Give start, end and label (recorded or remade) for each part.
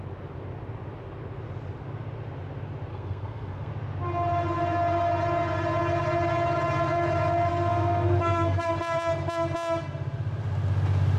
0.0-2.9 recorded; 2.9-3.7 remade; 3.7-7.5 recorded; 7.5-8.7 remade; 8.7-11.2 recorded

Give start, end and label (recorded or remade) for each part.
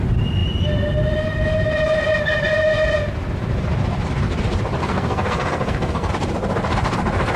0.0-4.8 recorded; 4.8-6.1 remade; 6.1-7.4 recorded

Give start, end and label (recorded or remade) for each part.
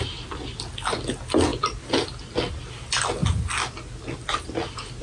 0.0-5.0 recorded